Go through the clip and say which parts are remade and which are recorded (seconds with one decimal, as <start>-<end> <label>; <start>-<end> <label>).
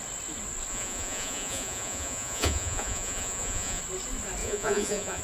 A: 0.0-0.7 recorded; 0.7-3.8 remade; 3.8-4.4 recorded; 4.4-5.2 remade